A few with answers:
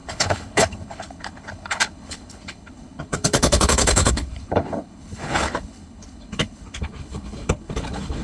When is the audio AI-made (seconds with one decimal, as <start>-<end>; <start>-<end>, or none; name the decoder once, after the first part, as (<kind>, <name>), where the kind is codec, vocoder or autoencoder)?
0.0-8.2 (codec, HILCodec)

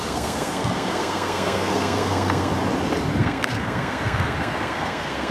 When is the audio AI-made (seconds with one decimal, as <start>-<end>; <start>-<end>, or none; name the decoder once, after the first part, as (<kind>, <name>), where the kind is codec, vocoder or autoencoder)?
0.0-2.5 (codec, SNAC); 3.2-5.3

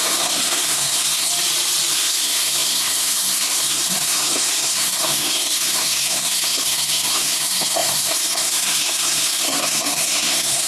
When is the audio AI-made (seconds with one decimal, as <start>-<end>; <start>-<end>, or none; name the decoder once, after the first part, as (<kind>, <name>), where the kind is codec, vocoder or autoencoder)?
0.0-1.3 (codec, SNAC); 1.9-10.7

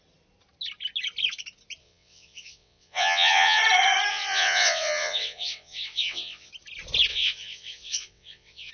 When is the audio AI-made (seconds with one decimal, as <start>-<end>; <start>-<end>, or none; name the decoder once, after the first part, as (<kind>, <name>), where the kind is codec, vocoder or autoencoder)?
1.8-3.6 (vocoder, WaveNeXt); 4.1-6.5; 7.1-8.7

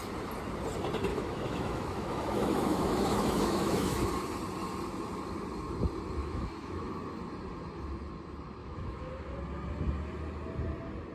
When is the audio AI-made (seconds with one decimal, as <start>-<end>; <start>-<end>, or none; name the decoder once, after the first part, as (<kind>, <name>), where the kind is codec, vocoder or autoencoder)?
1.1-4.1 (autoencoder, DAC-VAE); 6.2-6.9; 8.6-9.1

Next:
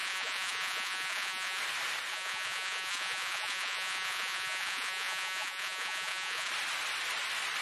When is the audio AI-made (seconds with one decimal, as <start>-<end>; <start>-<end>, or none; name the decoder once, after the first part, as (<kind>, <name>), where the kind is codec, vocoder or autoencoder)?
0.0-1.6 (vocoder, Vocos); 2.1-6.5